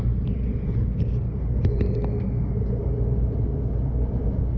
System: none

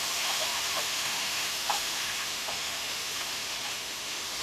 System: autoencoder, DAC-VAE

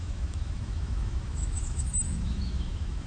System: autoencoder, DAC-VAE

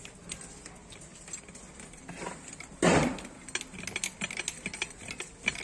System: none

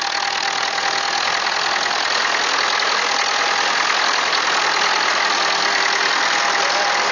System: none